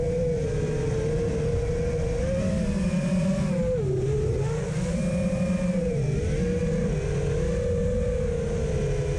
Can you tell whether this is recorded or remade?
recorded